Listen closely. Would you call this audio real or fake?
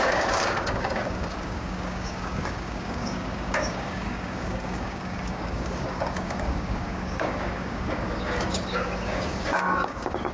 fake